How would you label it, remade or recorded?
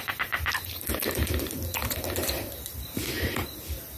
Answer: remade